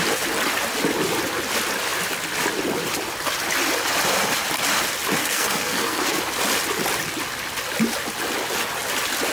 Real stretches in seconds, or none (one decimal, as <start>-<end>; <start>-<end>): 0.0-5.2; 6.2-9.3